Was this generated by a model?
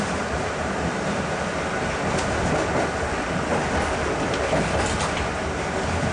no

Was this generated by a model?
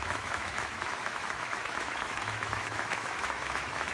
yes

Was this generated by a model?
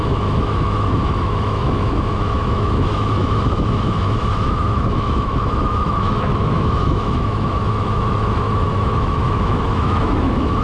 yes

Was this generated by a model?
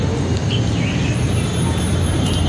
no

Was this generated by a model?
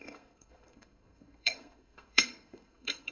yes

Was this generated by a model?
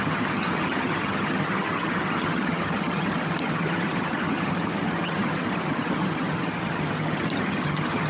yes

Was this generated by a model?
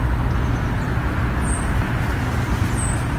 no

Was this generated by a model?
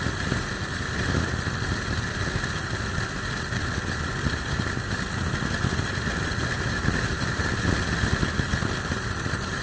no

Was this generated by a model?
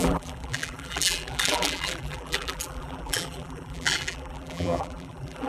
yes